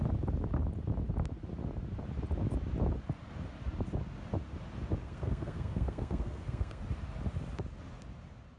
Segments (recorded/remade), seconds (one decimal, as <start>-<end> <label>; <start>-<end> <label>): 0.0-5.0 recorded; 5.0-6.8 remade; 6.8-8.6 recorded